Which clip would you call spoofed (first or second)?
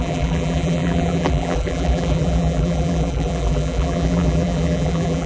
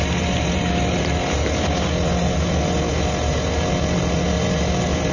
first